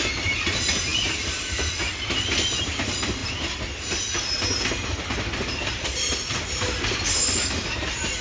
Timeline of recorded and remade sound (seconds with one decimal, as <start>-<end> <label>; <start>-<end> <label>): 0.0-3.2 remade; 3.2-5.5 recorded; 5.5-8.2 remade